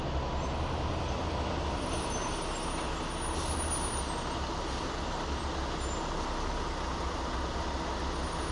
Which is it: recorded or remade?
recorded